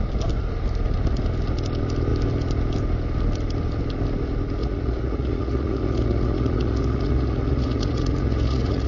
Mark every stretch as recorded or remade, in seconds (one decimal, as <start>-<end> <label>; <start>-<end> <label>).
0.0-4.6 recorded; 4.6-8.9 remade